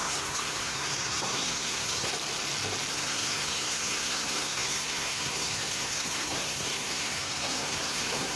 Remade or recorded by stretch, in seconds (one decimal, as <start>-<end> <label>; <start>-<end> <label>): 0.0-2.1 remade; 2.1-2.9 recorded; 2.9-8.4 remade